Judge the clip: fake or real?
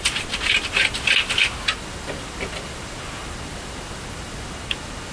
real